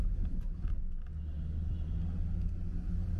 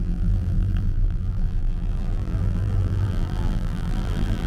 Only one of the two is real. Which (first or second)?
first